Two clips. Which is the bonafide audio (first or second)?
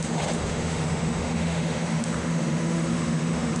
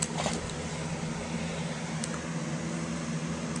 second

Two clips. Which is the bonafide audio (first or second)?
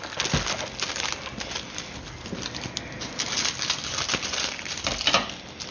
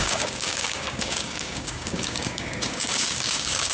first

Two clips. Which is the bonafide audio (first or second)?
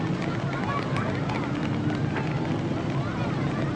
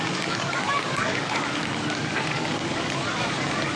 first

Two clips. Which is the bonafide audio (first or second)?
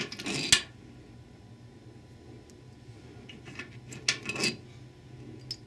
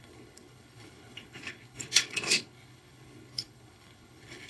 first